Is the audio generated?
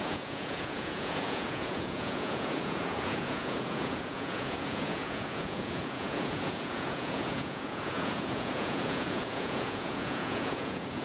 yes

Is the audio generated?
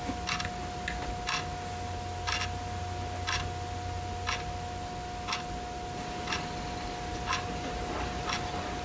no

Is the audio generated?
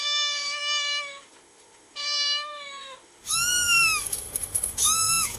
yes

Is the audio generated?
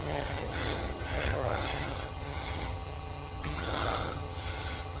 yes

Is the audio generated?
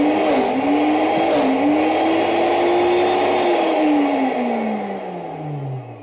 no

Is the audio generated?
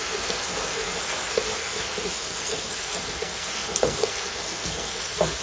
yes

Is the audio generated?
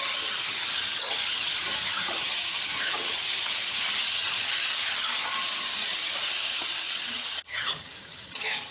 yes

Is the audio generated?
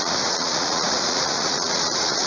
yes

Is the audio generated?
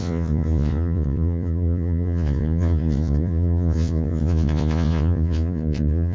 yes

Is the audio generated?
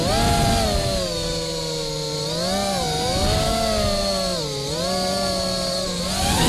no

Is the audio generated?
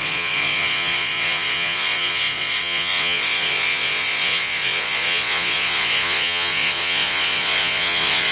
yes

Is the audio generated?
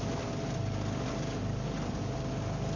no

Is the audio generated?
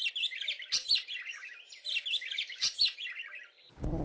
yes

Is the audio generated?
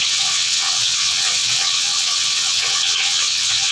yes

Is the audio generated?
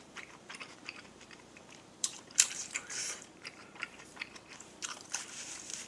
yes